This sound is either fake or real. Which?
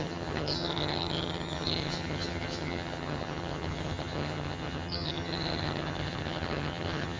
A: fake